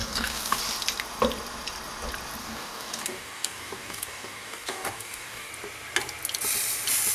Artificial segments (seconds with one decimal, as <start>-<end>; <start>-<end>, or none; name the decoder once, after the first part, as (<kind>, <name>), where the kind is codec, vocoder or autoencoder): 0.0-0.6 (codec, DAC); 2.4-5.5